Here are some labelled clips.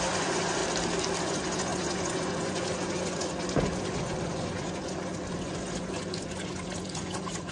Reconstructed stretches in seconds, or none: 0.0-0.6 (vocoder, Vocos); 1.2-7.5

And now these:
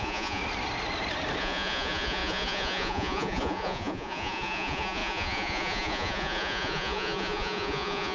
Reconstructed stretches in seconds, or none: 0.0-0.4 (vocoder, Vocos); 1.4-8.1